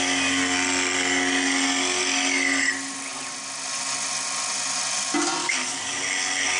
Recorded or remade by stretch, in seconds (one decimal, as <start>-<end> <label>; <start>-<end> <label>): 0.0-5.4 recorded; 5.4-5.9 remade; 5.9-6.6 recorded